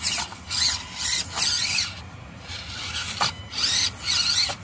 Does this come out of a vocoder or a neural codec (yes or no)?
no